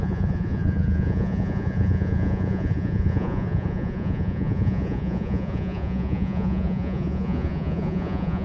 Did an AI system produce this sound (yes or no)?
yes